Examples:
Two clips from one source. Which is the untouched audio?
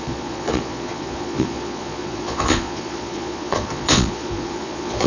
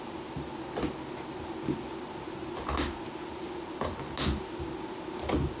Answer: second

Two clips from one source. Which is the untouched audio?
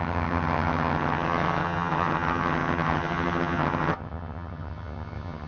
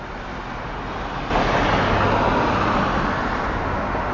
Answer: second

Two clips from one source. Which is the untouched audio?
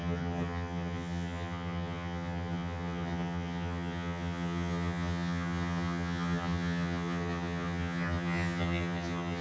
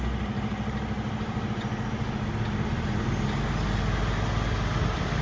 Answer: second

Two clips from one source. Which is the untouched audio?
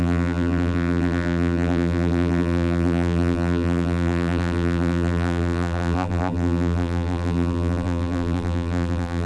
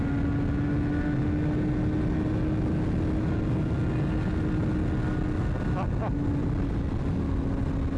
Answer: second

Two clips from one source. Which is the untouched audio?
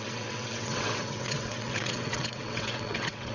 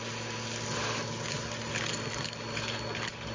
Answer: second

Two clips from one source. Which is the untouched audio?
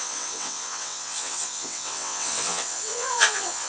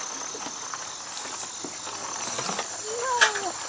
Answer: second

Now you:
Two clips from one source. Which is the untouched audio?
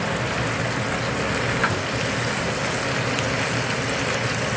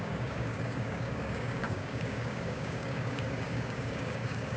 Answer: first